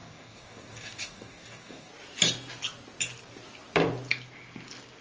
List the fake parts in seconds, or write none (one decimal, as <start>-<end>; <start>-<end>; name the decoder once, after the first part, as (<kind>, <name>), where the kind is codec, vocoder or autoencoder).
0.0-1.9 (codec, DAC)